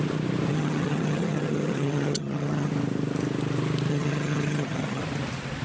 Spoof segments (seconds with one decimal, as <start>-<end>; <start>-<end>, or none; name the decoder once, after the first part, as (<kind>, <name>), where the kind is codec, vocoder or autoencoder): 0.5-2.7 (vocoder, HiFi-GAN); 3.9-5.0